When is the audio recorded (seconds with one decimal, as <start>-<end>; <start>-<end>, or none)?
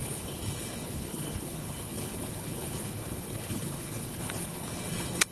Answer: none